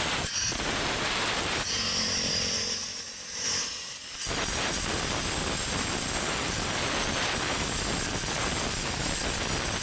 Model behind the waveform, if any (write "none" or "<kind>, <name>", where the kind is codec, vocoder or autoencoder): none